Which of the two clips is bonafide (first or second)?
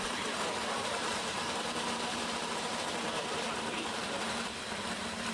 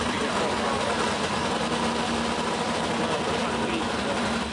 second